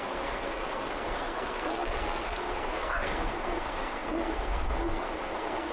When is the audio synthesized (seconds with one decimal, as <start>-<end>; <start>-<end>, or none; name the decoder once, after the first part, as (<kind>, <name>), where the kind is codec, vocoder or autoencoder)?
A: 0.0-5.7 (codec, SNAC)